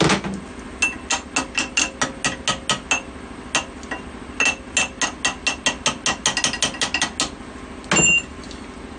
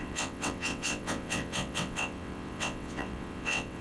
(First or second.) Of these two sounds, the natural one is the first